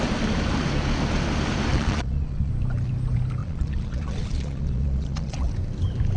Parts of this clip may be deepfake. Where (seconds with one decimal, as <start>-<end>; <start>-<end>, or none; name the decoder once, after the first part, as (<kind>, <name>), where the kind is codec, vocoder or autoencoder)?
1.7-2.5 (vocoder, Vocos); 3.4-5.5

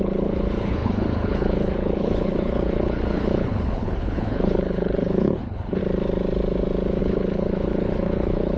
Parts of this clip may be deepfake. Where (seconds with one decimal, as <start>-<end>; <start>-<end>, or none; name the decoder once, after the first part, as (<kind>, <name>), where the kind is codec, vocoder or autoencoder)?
0.0-5.8 (codec, HILCodec); 7.0-8.6

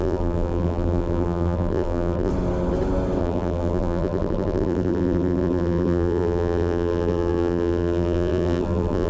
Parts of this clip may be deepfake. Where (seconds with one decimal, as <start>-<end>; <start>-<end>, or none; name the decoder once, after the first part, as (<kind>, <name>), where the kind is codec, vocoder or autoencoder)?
0.0-2.3 (vocoder, BigVGAN v2); 3.2-9.1

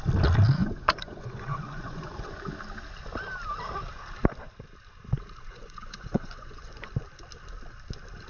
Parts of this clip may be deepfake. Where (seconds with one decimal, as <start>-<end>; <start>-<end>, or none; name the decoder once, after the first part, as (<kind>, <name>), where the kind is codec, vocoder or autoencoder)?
0.6-2.4 (vocoder, Vocos); 5.6-6.9

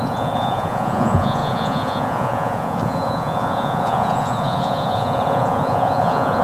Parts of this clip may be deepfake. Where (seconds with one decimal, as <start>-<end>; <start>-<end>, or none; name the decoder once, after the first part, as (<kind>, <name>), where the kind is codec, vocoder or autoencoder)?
0.0-6.4 (vocoder, Vocos)